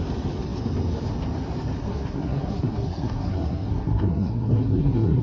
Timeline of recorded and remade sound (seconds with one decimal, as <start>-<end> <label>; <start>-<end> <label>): 0.0-1.8 recorded; 1.8-5.2 remade